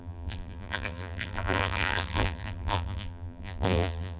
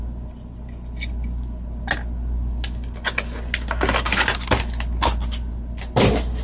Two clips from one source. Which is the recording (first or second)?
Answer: second